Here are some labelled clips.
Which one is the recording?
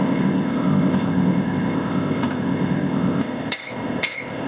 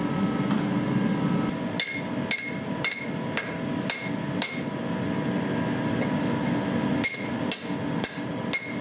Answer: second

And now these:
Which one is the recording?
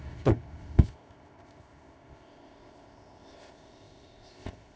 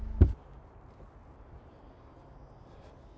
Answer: second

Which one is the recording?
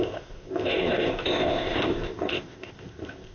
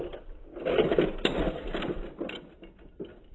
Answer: second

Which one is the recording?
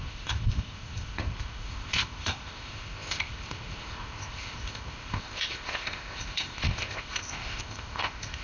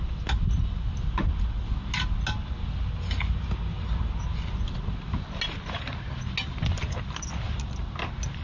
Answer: second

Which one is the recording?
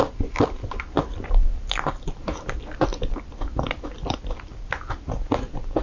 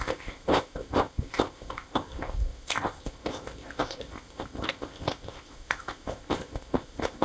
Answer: first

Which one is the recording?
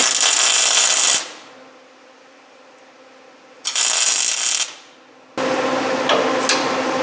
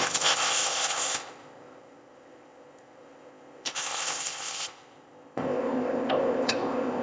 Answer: first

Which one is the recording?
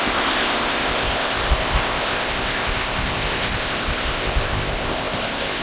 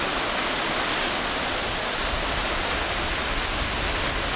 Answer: second